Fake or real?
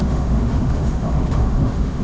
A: fake